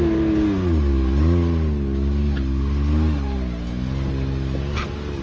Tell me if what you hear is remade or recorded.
recorded